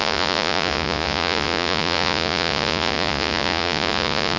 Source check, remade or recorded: remade